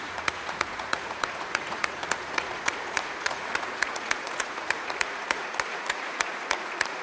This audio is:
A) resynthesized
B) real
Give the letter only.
A